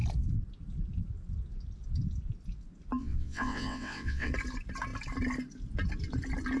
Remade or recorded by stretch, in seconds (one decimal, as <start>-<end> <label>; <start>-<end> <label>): 0.0-3.0 recorded; 3.0-4.3 remade; 4.3-6.6 recorded